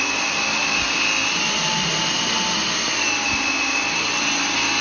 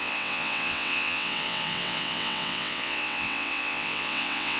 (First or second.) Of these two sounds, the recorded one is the first